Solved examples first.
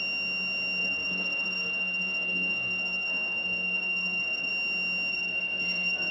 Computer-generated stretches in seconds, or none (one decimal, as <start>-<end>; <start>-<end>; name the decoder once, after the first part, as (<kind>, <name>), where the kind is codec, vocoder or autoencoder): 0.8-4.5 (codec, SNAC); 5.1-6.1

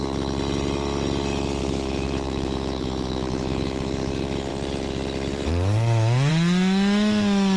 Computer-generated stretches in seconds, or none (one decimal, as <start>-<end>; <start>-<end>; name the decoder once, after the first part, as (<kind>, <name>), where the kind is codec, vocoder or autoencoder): 1.6-4.1 (autoencoder, DAC-VAE)

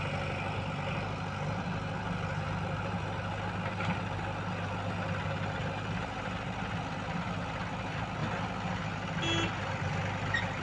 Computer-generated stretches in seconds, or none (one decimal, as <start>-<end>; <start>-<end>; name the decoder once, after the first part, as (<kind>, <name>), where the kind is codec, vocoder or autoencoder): none

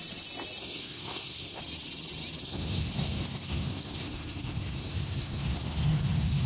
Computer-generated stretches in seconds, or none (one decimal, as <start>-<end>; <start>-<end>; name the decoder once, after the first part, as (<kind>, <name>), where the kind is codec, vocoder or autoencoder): 0.6-1.6 (codec, SNAC); 2.4-6.5

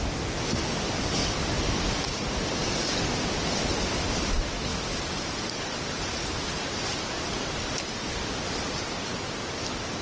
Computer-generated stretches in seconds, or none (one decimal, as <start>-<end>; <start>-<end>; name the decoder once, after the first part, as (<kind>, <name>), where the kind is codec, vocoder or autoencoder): none

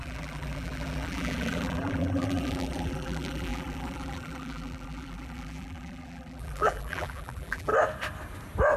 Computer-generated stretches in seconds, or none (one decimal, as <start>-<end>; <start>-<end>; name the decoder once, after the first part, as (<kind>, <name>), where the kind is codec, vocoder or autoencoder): 0.0-7.7 (vocoder, BigVGAN v2)